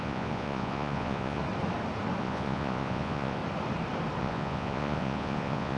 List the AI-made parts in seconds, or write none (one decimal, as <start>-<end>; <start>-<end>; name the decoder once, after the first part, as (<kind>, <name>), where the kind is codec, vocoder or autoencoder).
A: 0.0-1.4 (vocoder, Vocos); 2.2-3.4; 4.2-5.8